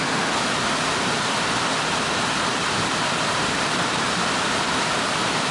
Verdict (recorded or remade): recorded